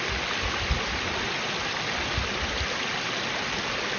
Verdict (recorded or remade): recorded